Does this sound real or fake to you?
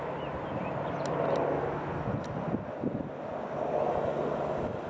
real